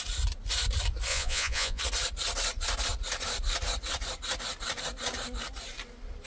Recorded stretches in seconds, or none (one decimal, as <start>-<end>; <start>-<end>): 0.0-1.1; 1.8-6.3